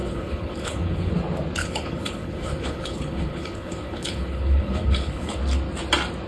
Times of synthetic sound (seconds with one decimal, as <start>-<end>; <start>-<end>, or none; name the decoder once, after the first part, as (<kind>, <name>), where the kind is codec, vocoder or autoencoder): 0.0-1.1 (codec, HILCodec); 1.6-5.4